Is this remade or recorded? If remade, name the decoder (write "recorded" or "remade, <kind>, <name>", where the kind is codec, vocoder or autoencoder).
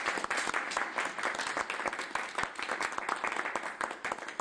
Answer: recorded